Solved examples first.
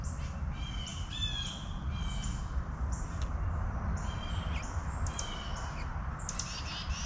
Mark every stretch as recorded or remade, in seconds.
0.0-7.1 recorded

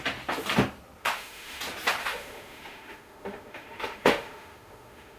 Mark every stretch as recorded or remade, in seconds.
0.0-1.0 recorded; 1.0-1.6 remade; 1.6-2.0 recorded; 2.0-5.2 remade

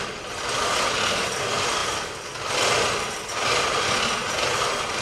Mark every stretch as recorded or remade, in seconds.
0.0-5.0 recorded

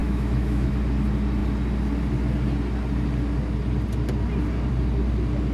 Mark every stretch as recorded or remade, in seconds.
0.0-0.7 remade; 0.7-5.5 recorded

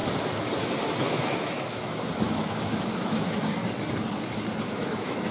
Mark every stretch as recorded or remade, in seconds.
0.0-0.9 recorded; 0.9-3.6 remade; 3.6-4.6 recorded; 4.6-5.3 remade